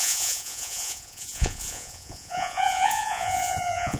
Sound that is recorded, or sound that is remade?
remade